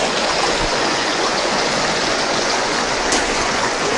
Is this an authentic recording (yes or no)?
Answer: no